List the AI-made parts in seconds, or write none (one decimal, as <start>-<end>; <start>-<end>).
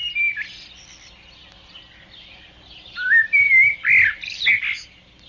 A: none